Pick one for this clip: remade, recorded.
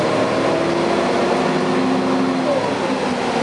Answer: recorded